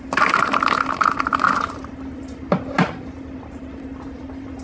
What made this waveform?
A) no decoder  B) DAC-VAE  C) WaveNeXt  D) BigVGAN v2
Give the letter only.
A